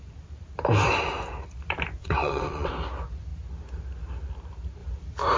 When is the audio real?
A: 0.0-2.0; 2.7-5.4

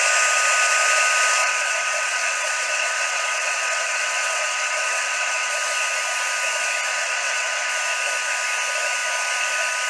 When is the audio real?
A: 0.0-1.4; 5.5-6.9; 7.7-9.9

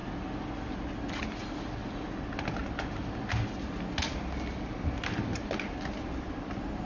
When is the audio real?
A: 0.0-6.9

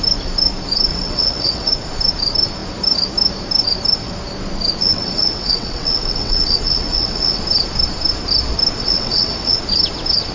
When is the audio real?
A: 0.0-0.9; 1.7-4.8; 7.4-8.8; 9.6-10.3

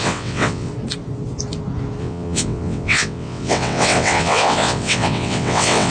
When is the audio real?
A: 0.7-2.0